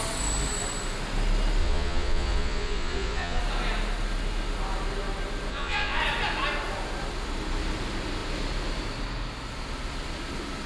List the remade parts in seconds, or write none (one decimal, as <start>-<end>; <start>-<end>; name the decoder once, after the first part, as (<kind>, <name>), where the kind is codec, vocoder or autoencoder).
1.6-3.4 (vocoder, Vocos); 5.5-6.0